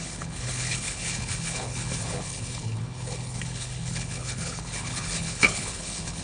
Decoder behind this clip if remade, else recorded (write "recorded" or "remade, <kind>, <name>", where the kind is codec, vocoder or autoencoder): remade, codec, HILCodec